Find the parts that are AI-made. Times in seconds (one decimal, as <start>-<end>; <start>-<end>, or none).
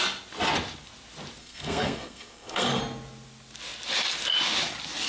1.4-2.8